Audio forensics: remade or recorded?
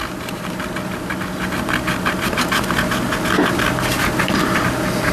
recorded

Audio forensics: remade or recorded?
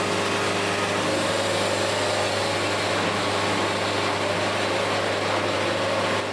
recorded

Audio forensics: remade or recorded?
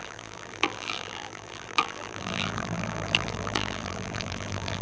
remade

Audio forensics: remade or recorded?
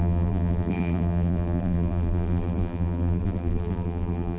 remade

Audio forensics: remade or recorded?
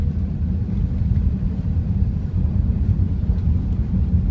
recorded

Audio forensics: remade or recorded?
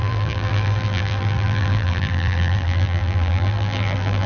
remade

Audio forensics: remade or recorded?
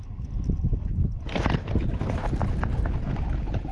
recorded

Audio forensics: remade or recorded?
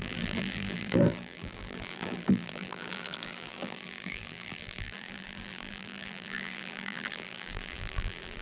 remade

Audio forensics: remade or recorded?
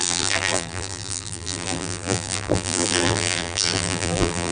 remade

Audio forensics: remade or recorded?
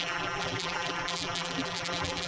remade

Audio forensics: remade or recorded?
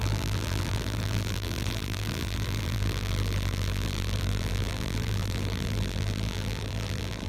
remade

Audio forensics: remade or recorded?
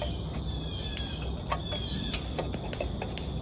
recorded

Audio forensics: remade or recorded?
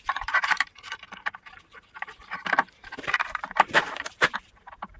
remade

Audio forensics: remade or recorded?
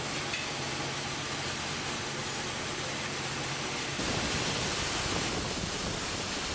recorded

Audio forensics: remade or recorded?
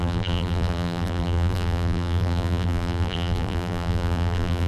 remade